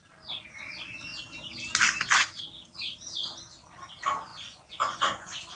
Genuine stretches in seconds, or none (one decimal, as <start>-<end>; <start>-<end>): 0.0-4.3